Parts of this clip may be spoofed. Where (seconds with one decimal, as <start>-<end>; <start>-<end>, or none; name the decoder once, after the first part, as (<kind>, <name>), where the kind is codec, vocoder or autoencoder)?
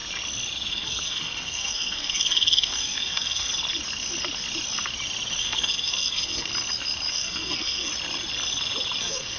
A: 0.7-3.5 (codec, SNAC); 5.4-6.5; 7.1-7.9; 9.0-9.4